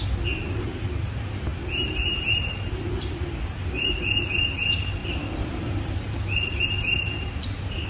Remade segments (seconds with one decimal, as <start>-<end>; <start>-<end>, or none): 1.5-3.0; 5.0-7.9